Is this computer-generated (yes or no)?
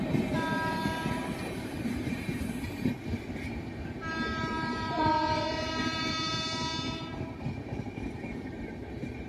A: yes